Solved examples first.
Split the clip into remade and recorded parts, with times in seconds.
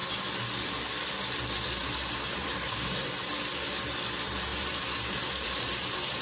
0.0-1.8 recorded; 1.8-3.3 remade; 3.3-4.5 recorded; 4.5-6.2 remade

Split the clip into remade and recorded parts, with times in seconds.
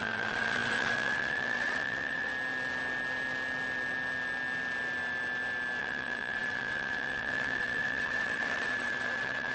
0.0-2.3 remade; 2.3-5.8 recorded; 5.8-9.5 remade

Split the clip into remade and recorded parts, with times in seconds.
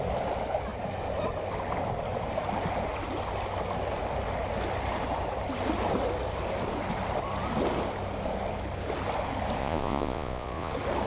0.0-9.6 recorded; 9.6-10.7 remade; 10.7-11.1 recorded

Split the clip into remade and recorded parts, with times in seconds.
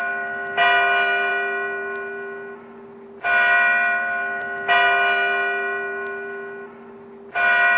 0.0-7.8 recorded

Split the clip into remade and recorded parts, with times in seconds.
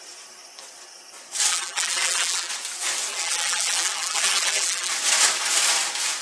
0.0-1.5 recorded; 1.5-2.5 remade; 2.5-3.1 recorded; 3.1-4.9 remade; 4.9-6.2 recorded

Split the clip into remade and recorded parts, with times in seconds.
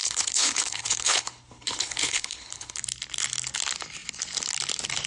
0.0-2.8 remade; 2.8-5.1 recorded